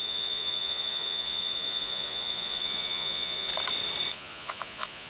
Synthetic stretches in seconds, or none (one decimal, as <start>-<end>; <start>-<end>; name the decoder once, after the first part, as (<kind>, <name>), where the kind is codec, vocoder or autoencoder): 0.0-3.5 (vocoder, Vocos); 4.1-5.1